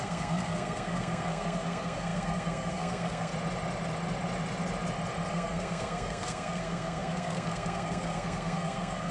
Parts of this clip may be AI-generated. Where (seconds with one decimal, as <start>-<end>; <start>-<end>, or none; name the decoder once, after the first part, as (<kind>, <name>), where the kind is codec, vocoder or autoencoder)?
0.0-3.3 (codec, SNAC); 5.3-9.1